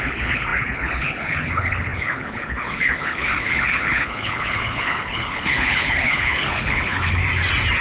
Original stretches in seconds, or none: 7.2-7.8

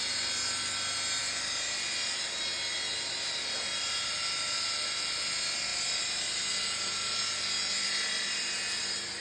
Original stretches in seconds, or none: 0.0-9.2

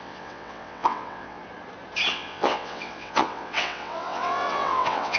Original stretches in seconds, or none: 1.4-2.1

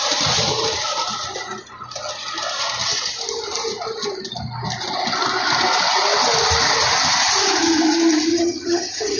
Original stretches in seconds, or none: 0.0-8.3

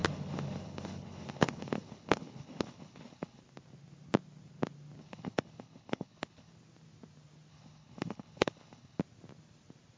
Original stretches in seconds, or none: 3.4-5.0; 6.5-7.5; 9.0-10.0

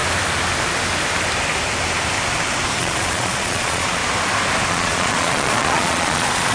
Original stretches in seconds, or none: 0.0-2.8; 4.0-4.7